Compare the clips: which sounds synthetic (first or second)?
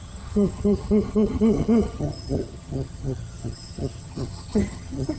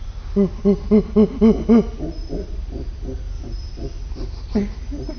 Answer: first